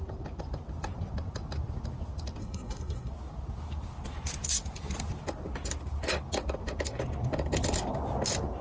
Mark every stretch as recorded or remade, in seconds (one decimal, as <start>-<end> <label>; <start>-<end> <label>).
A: 0.0-2.4 recorded; 2.4-3.1 remade; 3.1-8.6 recorded